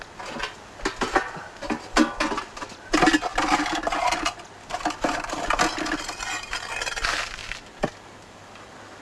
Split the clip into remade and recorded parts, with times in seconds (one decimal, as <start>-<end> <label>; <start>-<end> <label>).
0.0-9.0 recorded